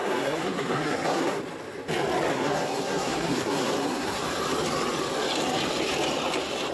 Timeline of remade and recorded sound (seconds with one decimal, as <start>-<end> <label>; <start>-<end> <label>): 0.0-1.4 remade; 1.4-2.3 recorded; 2.3-4.2 remade; 4.2-6.7 recorded